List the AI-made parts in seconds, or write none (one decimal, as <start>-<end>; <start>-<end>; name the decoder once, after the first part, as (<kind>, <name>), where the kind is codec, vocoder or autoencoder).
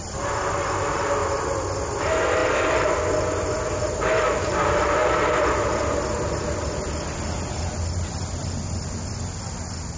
none